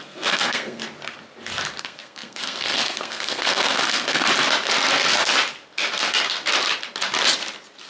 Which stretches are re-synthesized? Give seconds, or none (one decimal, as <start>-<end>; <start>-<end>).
0.0-0.8; 1.8-4.3